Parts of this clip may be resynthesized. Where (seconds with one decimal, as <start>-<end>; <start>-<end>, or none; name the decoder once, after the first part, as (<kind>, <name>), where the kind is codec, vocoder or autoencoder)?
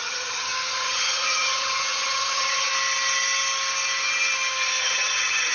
0.0-2.7 (vocoder, HiFi-GAN); 4.8-5.5